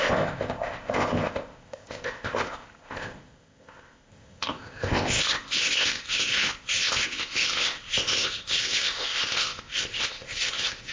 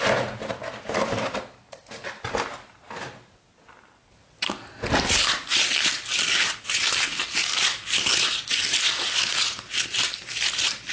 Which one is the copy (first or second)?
first